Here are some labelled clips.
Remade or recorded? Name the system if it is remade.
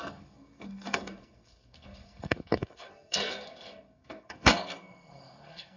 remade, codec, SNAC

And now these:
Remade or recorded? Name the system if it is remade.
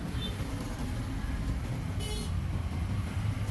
recorded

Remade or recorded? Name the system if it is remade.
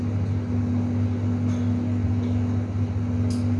recorded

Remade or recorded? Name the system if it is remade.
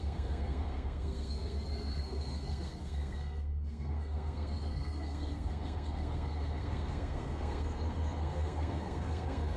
remade, codec, SNAC